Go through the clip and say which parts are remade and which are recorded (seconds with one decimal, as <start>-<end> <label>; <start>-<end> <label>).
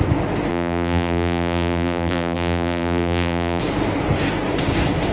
0.0-0.5 recorded; 0.5-3.6 remade; 3.6-5.1 recorded